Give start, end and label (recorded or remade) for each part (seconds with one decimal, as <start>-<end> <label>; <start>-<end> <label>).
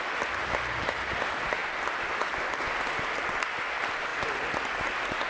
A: 0.0-5.3 recorded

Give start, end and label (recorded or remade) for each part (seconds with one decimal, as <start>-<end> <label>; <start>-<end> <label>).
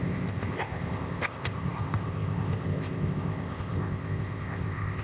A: 0.0-5.0 remade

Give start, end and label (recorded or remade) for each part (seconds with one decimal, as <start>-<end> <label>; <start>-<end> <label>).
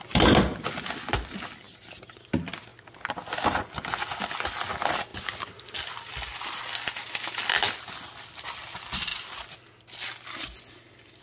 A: 0.0-5.1 recorded; 5.1-6.6 remade; 6.6-11.2 recorded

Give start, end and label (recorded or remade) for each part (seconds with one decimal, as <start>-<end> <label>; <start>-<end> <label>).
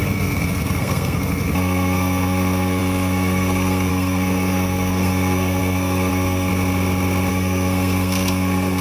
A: 0.0-6.5 remade; 6.5-7.3 recorded; 7.3-8.8 remade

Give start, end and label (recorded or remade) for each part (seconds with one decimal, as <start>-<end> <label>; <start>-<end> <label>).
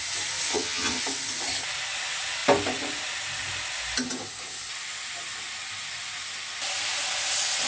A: 0.0-0.5 recorded; 0.5-1.0 remade; 1.0-7.7 recorded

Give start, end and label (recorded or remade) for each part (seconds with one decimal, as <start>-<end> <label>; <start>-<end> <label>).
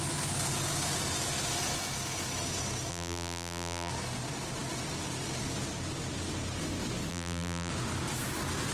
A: 0.0-2.9 recorded; 2.9-3.9 remade; 3.9-7.1 recorded; 7.1-7.7 remade; 7.7-8.7 recorded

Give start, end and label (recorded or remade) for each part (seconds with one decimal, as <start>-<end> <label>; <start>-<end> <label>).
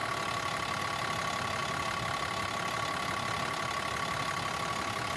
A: 0.0-5.2 recorded